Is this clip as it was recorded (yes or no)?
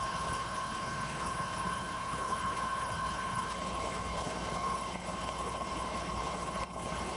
no